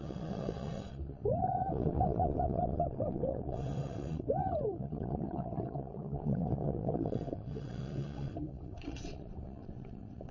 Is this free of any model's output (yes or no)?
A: no